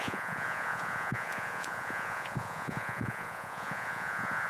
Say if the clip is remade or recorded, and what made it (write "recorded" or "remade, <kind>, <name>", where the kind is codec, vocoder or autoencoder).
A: remade, vocoder, Vocos